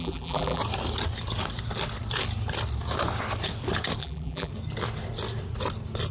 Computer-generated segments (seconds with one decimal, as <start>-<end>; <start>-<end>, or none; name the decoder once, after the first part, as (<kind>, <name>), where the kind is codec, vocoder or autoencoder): 0.0-0.6 (vocoder, BigVGAN v2); 4.0-4.5